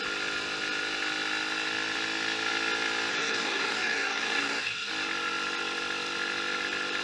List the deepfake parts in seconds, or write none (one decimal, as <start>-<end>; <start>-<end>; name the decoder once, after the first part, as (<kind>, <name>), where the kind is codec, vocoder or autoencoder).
3.1-4.9 (codec, DAC)